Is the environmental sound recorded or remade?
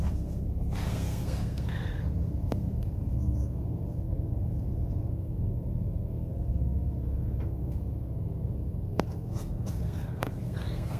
remade